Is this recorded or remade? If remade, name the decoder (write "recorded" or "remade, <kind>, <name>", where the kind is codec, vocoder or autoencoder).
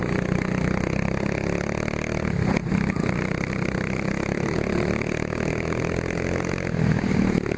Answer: recorded